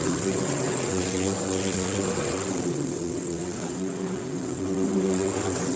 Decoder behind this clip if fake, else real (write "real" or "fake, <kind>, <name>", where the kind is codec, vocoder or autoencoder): fake, vocoder, WaveNeXt